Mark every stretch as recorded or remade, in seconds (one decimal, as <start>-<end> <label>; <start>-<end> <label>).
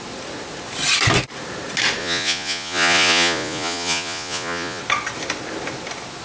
0.0-2.0 recorded; 2.0-4.8 remade; 4.8-6.2 recorded